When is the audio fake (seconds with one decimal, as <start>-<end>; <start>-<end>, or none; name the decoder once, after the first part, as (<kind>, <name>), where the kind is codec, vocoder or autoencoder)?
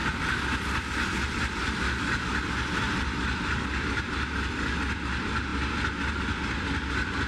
none